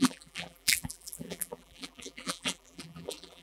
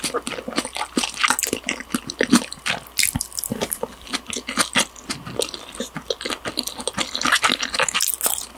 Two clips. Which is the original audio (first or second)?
second